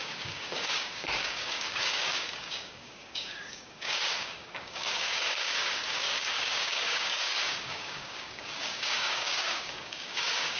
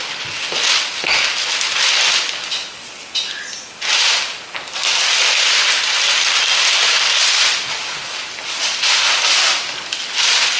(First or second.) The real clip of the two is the second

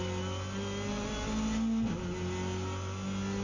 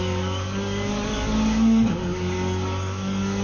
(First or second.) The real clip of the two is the first